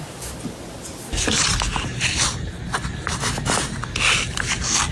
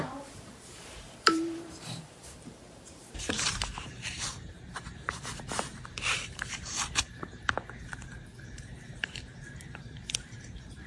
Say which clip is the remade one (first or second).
second